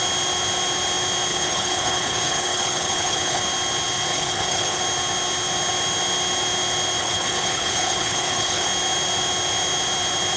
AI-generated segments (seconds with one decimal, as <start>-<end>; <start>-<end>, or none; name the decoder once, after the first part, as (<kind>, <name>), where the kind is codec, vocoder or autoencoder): 1.3-3.4 (codec, HILCodec); 4.1-4.8; 7.0-8.7